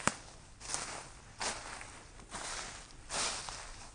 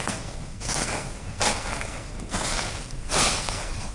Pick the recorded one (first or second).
first